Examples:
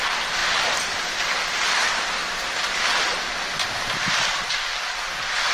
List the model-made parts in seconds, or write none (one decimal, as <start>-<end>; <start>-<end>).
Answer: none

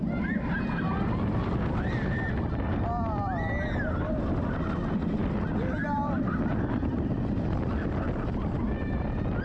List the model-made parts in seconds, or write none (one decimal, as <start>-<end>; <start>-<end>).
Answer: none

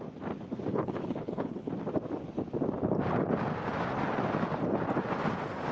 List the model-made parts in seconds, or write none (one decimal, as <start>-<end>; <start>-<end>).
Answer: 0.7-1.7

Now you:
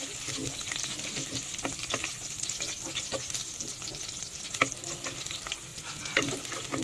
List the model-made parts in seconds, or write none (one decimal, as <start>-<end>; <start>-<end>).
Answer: 5.7-6.3

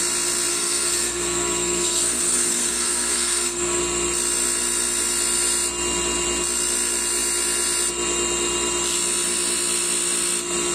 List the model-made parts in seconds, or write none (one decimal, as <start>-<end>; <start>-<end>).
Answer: 0.5-3.8

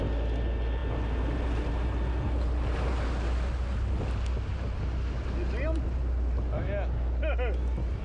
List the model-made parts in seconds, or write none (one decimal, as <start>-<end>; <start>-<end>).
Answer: none